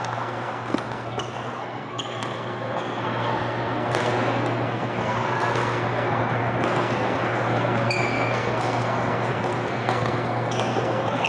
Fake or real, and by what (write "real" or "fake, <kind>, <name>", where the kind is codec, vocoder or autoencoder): fake, codec, SNAC